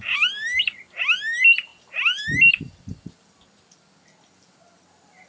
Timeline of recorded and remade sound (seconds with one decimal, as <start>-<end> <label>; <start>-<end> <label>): 0.0-5.3 recorded